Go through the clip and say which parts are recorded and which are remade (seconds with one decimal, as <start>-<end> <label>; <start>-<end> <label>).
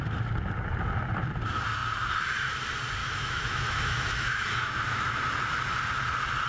0.0-3.0 recorded; 3.0-5.2 remade; 5.2-6.5 recorded